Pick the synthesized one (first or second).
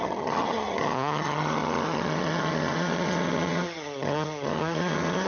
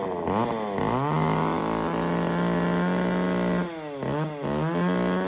first